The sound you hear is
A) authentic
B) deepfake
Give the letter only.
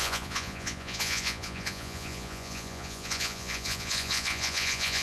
B